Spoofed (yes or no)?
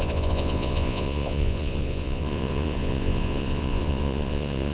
yes